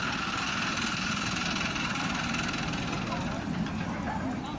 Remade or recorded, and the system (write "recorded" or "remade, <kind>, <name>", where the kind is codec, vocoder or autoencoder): recorded